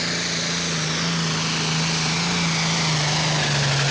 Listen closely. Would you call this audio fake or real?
real